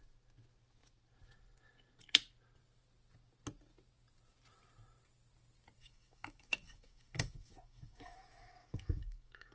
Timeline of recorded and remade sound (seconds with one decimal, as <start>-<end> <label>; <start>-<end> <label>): 0.0-5.8 recorded; 5.8-9.5 remade